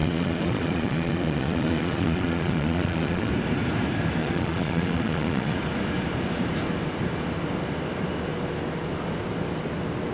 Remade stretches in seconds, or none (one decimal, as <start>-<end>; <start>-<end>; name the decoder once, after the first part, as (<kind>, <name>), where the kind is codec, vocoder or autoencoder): 0.0-3.3 (vocoder, Vocos); 4.2-5.6